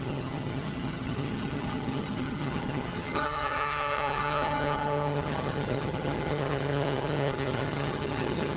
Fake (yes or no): yes